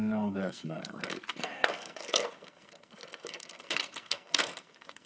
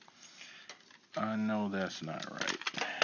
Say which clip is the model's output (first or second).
first